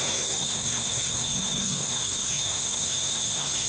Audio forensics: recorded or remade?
remade